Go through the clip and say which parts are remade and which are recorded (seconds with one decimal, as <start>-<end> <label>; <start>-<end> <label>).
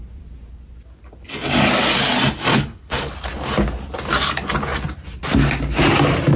0.0-2.5 recorded; 2.5-3.1 remade; 3.1-6.4 recorded